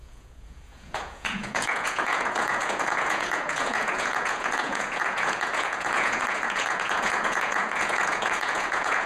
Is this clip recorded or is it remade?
remade